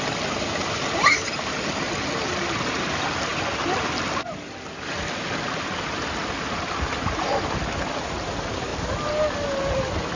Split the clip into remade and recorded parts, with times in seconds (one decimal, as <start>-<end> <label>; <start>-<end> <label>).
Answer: 0.0-10.2 recorded